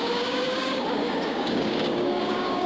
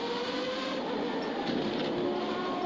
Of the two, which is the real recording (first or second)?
second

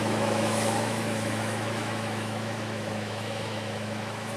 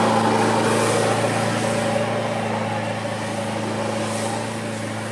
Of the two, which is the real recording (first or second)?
second